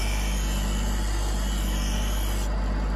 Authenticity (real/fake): real